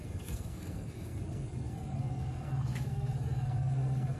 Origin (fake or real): fake